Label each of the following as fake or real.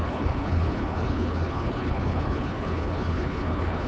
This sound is fake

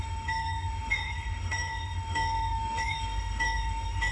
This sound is fake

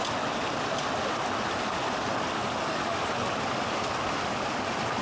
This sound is real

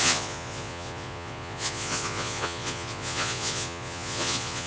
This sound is fake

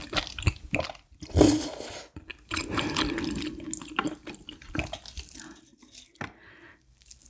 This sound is real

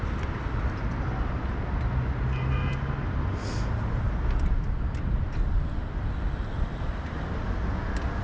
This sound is real